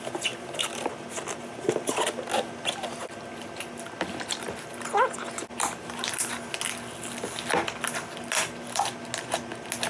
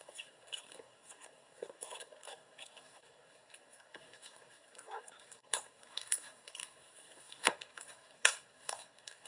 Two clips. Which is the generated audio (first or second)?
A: second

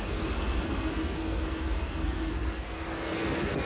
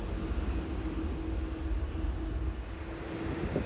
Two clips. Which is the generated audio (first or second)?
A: first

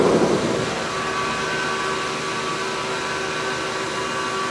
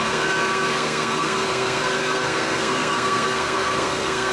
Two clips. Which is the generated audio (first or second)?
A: second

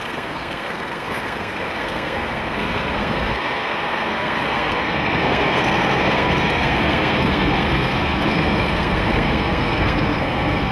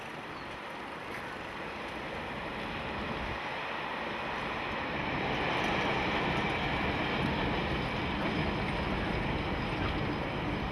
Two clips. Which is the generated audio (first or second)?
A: first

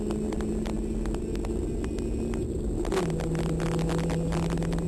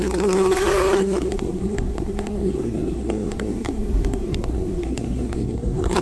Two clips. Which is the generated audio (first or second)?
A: second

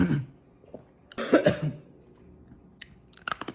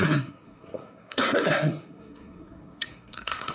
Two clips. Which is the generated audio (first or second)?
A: second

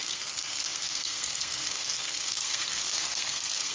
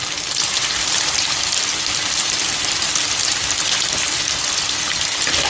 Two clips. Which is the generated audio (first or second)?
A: first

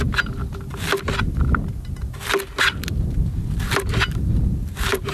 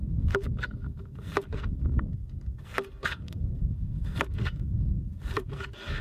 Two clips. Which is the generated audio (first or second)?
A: second